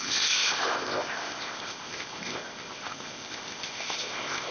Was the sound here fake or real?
fake